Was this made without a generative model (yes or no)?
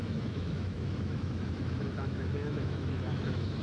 no